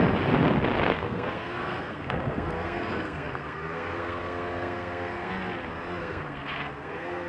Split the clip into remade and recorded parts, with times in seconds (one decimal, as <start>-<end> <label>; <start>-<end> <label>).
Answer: 0.0-0.9 recorded; 0.9-5.3 remade; 5.3-6.0 recorded; 6.0-7.3 remade